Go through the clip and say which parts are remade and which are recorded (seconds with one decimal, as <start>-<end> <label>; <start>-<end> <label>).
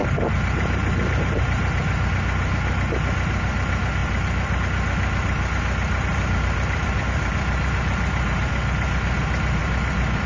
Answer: 0.0-2.1 remade; 2.1-4.0 recorded; 4.0-4.6 remade; 4.6-6.1 recorded; 6.1-8.4 remade; 8.4-9.6 recorded; 9.6-10.3 remade